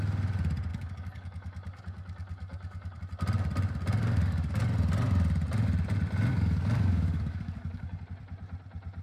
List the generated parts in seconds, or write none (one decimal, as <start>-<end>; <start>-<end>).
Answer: 0.7-3.0; 4.0-4.6; 6.3-8.0